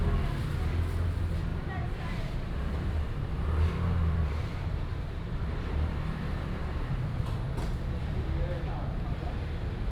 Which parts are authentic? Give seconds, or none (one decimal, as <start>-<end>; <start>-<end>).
0.0-1.5; 6.2-9.9